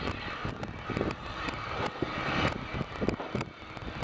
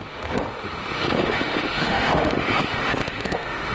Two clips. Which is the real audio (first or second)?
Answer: first